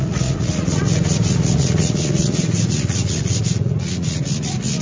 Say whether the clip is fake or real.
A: fake